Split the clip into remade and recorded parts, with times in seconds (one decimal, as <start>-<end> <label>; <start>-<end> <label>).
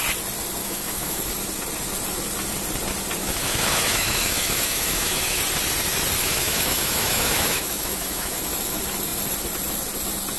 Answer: 0.0-0.6 recorded; 0.6-1.2 remade; 1.2-3.2 recorded; 3.2-5.4 remade; 5.4-6.2 recorded; 6.2-8.4 remade; 8.4-10.4 recorded